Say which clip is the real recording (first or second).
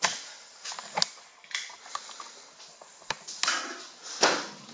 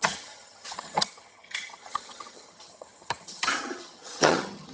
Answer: first